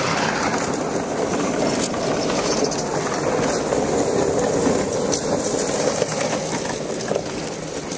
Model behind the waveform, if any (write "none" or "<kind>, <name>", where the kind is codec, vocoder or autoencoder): none